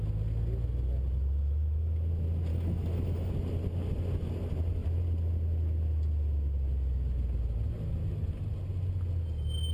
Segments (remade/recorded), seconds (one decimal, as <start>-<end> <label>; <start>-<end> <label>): 0.0-2.5 recorded; 2.5-3.3 remade; 3.3-9.7 recorded